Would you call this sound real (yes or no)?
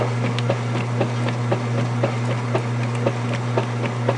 yes